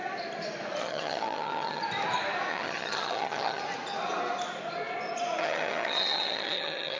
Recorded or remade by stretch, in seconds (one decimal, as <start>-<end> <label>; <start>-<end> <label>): 0.0-0.8 recorded; 0.8-1.8 remade; 1.8-2.5 recorded; 2.5-3.6 remade; 3.6-5.4 recorded; 5.4-7.0 remade